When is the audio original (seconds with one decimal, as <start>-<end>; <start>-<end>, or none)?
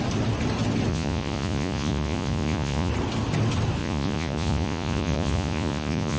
0.0-0.9; 2.9-3.8